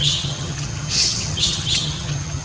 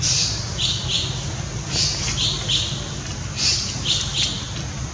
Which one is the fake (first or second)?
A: first